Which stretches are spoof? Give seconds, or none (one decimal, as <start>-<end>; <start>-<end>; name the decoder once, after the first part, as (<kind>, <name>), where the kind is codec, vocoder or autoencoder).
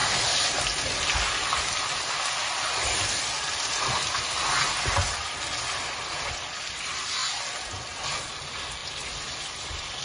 none